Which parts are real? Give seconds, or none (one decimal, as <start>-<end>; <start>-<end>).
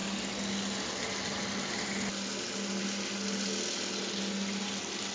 0.0-5.1